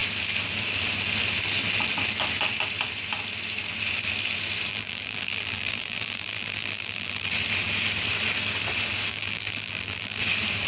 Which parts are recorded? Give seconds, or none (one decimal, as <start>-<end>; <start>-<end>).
0.0-4.7; 7.3-9.1; 10.2-10.7